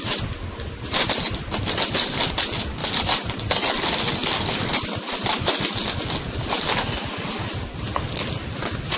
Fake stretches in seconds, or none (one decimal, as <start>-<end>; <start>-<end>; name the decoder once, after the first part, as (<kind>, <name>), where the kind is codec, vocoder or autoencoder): none